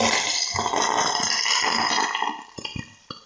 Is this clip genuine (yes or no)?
no